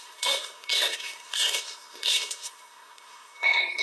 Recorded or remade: remade